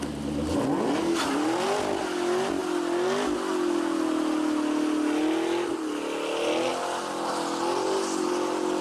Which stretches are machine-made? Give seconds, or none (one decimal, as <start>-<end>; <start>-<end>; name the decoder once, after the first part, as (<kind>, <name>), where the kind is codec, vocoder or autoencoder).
none